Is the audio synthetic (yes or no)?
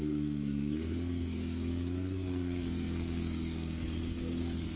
yes